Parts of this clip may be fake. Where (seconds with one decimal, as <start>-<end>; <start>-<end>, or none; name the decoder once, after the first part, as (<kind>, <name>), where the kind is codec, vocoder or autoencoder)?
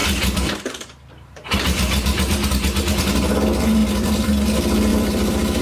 0.0-2.5 (vocoder, BigVGAN v2); 3.8-4.3; 4.9-5.6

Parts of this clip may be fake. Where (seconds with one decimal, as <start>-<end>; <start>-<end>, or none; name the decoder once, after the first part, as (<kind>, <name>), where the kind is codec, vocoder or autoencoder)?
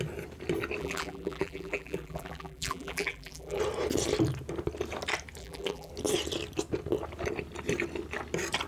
0.8-3.6 (vocoder, BigVGAN v2); 5.4-5.9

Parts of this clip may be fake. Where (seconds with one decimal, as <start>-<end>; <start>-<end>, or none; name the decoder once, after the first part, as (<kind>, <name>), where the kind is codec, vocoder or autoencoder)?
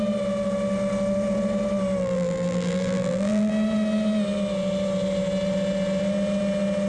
2.0-3.5 (vocoder, BigVGAN v2)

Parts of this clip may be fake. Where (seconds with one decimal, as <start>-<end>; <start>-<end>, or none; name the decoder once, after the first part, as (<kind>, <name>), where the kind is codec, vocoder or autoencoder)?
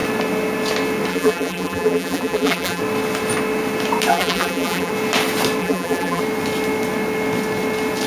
1.1-2.8 (vocoder, BigVGAN v2); 4.1-4.9; 5.6-6.2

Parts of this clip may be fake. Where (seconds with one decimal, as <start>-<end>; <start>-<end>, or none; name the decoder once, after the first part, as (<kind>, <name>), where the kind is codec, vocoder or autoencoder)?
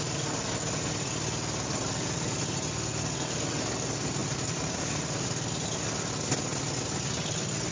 4.2-5.0 (vocoder, BigVGAN v2)